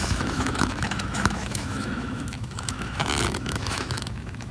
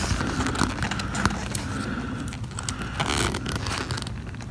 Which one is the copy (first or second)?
first